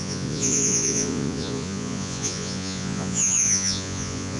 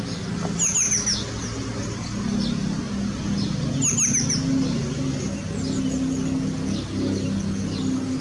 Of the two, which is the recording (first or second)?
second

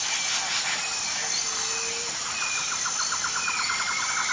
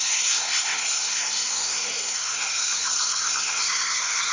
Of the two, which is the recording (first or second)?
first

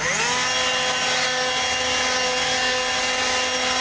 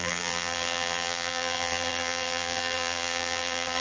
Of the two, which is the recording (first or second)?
first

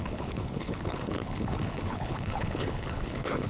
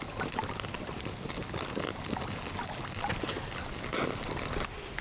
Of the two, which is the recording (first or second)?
second